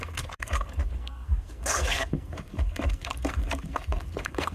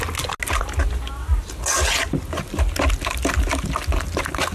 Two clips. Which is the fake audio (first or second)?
first